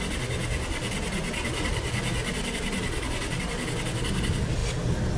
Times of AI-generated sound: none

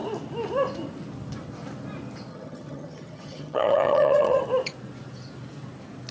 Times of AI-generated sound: 2.3-4.4 (vocoder, HiFi-GAN)

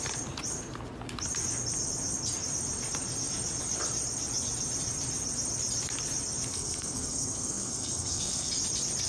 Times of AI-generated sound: 6.5-8.5 (codec, SNAC)

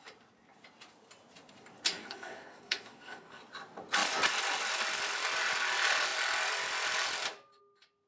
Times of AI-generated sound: 2.0-3.4 (codec, SNAC)

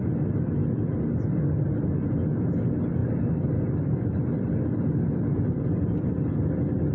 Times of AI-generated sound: 3.0-6.0 (vocoder, BigVGAN v2)

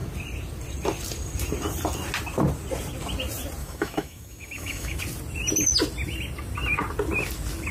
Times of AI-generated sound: 3.6-5.0 (autoencoder, DAC-VAE)

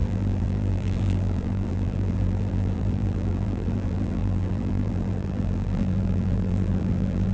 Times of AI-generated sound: 0.0-7.3 (vocoder, BigVGAN v2)